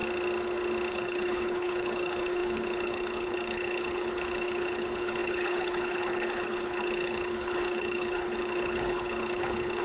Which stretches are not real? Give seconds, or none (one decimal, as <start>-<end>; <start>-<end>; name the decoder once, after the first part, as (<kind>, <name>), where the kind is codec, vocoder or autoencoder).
0.9-9.8 (codec, HILCodec)